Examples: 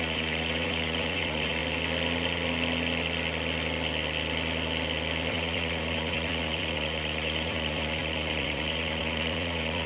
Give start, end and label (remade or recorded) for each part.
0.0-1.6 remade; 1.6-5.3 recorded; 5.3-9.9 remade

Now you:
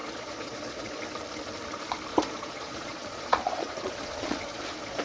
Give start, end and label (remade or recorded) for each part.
0.0-1.0 remade; 1.0-2.1 recorded; 2.1-5.0 remade

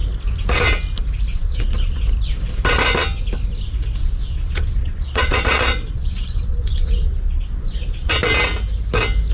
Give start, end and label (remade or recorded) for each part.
0.0-1.3 recorded; 1.3-2.0 remade; 2.0-4.0 recorded; 4.0-8.1 remade; 8.1-9.3 recorded

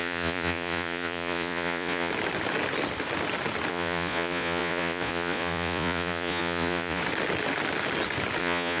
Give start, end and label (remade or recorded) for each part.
0.0-2.1 remade; 2.1-3.7 recorded; 3.7-7.0 remade; 7.0-8.4 recorded; 8.4-8.8 remade

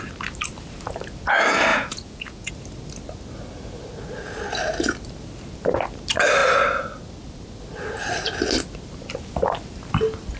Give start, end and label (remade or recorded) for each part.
0.0-1.7 recorded; 1.7-2.5 remade; 2.5-10.4 recorded

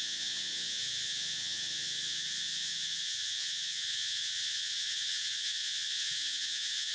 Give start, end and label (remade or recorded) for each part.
0.0-6.9 remade

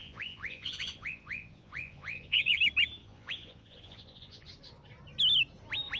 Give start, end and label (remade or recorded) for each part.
0.0-2.6 remade; 2.6-3.0 recorded; 3.0-4.5 remade; 4.5-6.0 recorded

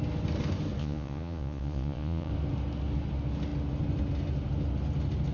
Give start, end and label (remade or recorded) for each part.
0.0-0.8 recorded; 0.8-2.3 remade; 2.3-5.3 recorded